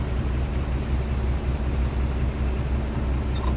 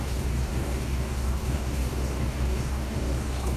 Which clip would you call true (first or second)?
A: first